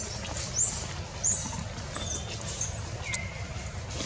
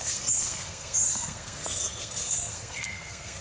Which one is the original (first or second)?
first